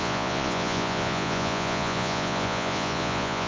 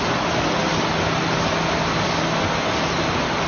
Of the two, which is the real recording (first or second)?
second